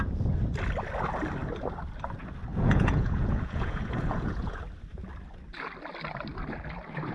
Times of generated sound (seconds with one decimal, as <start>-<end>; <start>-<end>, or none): 2.5-4.6